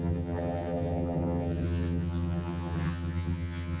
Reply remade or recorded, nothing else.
remade